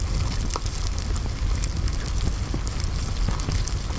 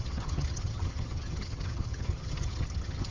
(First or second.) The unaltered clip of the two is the first